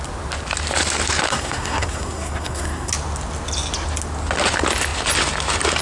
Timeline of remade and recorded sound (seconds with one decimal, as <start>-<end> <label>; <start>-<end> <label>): 0.0-1.3 recorded; 1.3-2.9 remade; 2.9-5.8 recorded